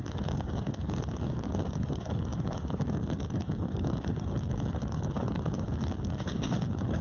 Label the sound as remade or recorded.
remade